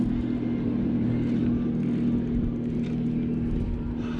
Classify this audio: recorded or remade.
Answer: recorded